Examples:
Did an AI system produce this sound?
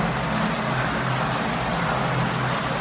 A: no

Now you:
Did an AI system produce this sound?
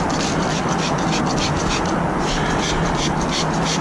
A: no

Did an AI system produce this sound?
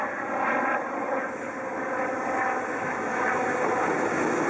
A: no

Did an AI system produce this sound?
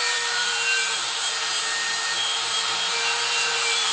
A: yes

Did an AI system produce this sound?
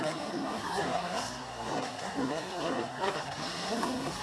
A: yes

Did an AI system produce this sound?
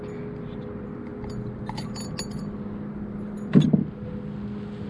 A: no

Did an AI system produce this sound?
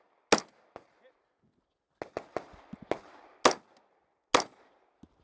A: no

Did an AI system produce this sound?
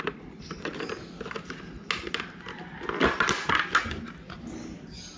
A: no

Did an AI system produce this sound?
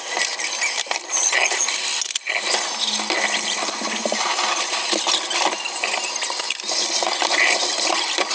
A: no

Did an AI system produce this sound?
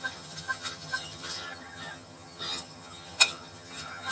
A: yes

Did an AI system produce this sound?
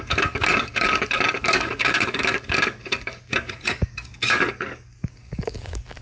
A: yes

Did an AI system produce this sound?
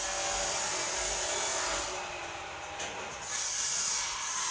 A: no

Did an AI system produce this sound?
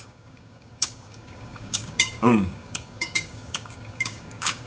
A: yes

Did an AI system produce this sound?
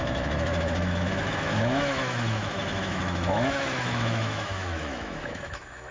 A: yes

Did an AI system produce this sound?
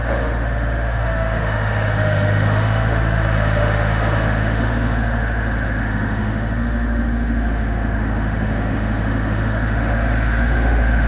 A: yes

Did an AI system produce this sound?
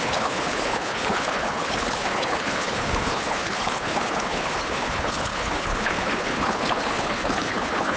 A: yes